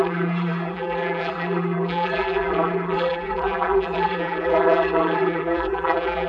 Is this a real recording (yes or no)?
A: no